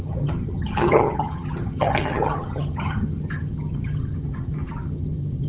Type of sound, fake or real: fake